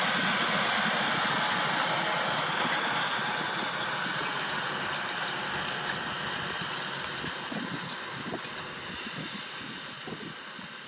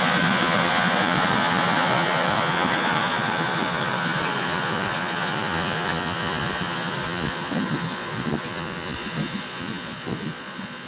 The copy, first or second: second